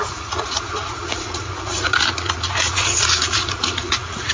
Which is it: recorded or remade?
remade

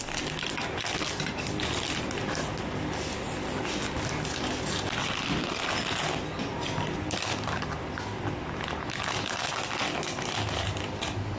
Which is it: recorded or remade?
recorded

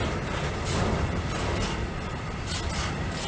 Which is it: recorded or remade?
recorded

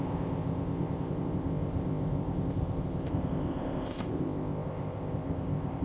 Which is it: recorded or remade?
remade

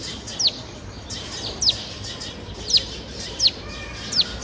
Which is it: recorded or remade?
recorded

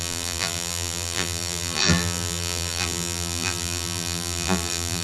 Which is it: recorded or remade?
remade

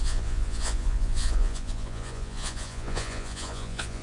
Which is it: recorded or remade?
remade